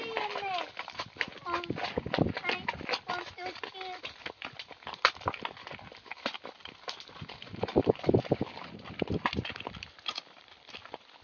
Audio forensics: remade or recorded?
recorded